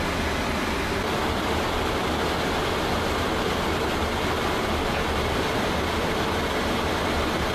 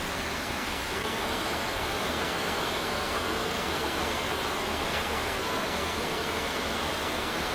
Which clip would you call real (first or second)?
first